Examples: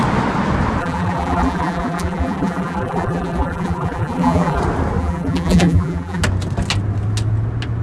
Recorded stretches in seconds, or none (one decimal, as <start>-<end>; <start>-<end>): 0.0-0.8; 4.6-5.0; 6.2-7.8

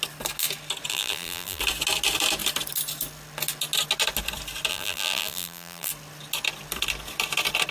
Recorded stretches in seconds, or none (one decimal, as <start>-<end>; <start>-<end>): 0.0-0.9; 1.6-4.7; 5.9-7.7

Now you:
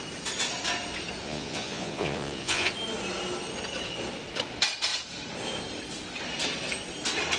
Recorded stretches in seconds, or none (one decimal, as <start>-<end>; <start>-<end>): 0.0-1.2; 2.7-7.4